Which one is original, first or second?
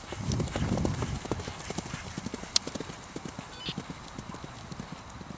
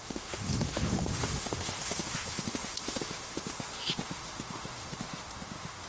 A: first